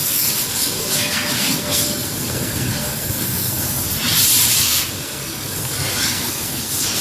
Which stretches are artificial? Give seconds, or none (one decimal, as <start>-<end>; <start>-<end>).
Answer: 0.0-3.9; 4.6-7.0